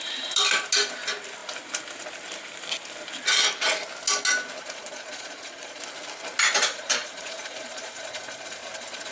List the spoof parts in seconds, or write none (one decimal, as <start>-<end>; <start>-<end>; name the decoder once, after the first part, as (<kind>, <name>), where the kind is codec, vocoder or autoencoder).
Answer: 4.6-5.8 (vocoder, Vocos); 6.7-9.1